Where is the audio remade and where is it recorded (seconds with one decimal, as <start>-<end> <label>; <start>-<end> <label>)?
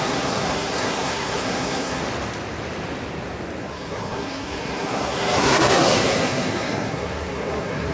0.0-2.0 remade; 2.0-3.6 recorded; 3.6-7.9 remade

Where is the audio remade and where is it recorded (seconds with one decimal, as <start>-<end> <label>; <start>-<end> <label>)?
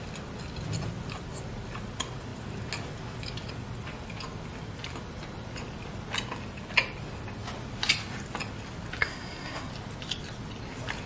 0.0-9.0 recorded; 9.0-9.7 remade; 9.7-11.1 recorded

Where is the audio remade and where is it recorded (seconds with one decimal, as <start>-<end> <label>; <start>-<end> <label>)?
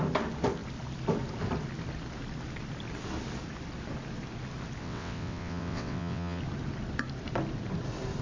0.0-4.8 recorded; 4.8-6.4 remade; 6.4-8.2 recorded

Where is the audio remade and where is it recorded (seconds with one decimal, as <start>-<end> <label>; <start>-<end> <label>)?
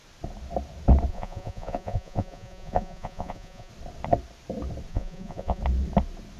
0.0-1.1 recorded; 1.1-3.7 remade; 3.7-4.9 recorded; 4.9-5.6 remade; 5.6-6.4 recorded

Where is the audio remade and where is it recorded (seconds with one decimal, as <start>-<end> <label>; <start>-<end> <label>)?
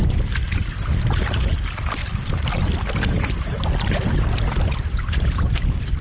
0.0-1.6 recorded; 1.6-2.0 remade; 2.0-3.9 recorded; 3.9-6.0 remade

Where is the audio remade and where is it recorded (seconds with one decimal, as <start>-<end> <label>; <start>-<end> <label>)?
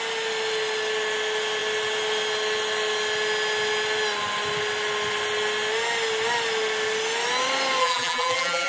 0.0-7.8 recorded; 7.8-8.7 remade